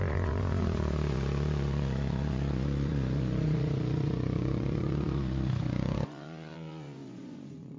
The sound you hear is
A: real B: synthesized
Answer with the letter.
B